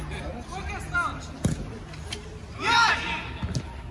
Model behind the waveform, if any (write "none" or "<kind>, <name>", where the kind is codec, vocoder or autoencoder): none